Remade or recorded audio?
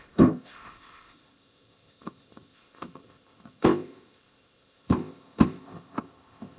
remade